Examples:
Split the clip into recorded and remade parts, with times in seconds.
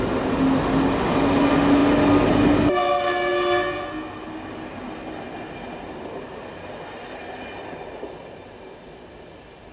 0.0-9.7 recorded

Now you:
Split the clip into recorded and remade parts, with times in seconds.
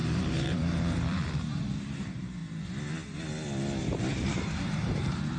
0.0-2.4 remade; 2.4-3.8 recorded; 3.8-5.4 remade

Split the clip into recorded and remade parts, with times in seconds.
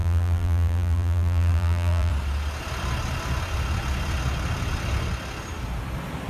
0.0-2.1 remade; 2.1-6.3 recorded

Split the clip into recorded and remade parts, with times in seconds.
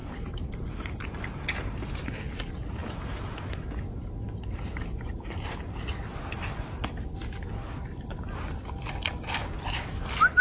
0.0-2.2 remade; 2.2-2.8 recorded; 2.8-5.9 remade; 5.9-6.4 recorded; 6.4-7.0 remade; 7.0-10.4 recorded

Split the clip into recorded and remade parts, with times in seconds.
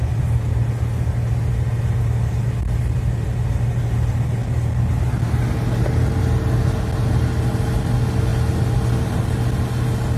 0.0-10.2 recorded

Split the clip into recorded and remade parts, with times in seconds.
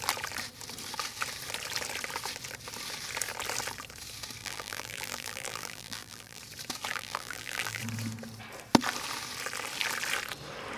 0.0-4.4 recorded; 4.4-6.4 remade; 6.4-6.9 recorded; 6.9-7.8 remade; 7.8-10.8 recorded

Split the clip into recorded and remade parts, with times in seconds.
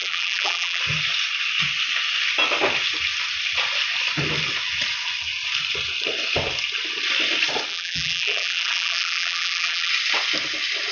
0.0-0.8 remade; 0.8-7.7 recorded; 7.7-9.9 remade; 9.9-10.9 recorded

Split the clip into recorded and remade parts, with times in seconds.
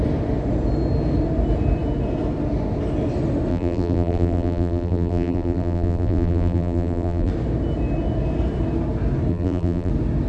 0.0-3.5 recorded; 3.5-7.3 remade; 7.3-9.3 recorded; 9.3-9.9 remade; 9.9-10.3 recorded